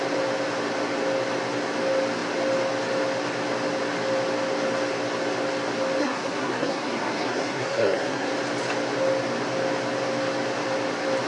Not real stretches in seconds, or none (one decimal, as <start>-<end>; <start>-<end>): 6.0-8.3